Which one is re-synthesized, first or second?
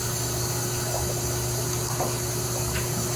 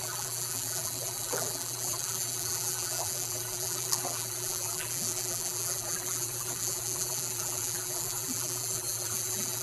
second